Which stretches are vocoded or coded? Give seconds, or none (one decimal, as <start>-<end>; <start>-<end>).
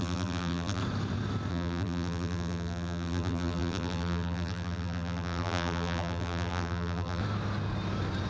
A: 0.0-0.8; 1.5-7.2